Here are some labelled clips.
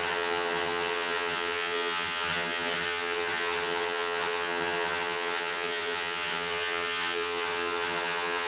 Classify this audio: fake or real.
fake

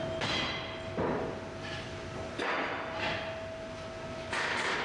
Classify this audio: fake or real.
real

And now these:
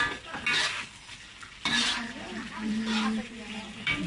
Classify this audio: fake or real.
real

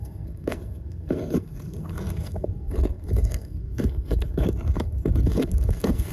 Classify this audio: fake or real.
fake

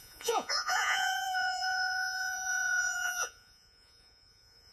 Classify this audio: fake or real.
fake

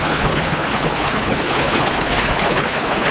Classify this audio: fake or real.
fake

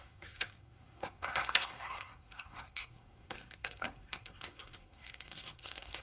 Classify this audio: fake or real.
fake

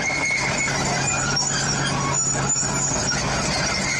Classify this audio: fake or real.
real